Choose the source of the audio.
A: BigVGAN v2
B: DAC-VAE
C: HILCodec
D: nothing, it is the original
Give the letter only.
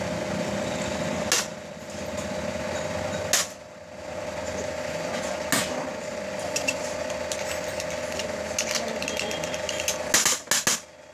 D